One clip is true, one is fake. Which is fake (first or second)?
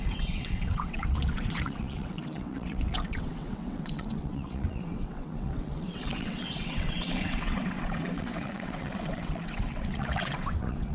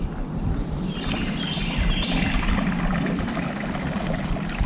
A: first